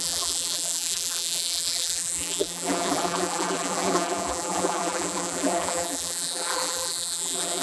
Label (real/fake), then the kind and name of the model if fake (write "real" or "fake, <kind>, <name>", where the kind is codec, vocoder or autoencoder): fake, vocoder, BigVGAN v2